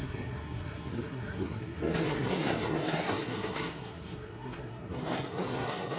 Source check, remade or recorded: remade